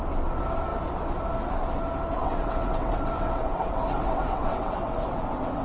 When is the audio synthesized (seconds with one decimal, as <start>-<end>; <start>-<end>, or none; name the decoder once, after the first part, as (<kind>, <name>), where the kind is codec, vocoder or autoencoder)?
2.2-5.6 (vocoder, WaveNeXt)